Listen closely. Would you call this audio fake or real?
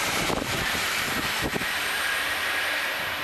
fake